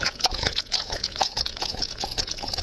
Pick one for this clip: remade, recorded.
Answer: remade